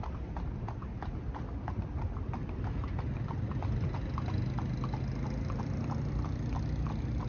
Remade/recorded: recorded